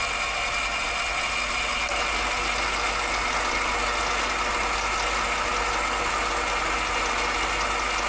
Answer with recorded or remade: recorded